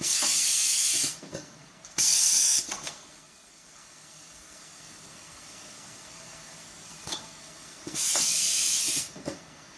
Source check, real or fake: fake